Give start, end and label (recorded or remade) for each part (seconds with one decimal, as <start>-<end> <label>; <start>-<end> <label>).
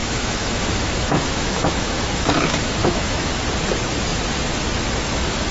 0.0-3.3 remade; 3.3-5.5 recorded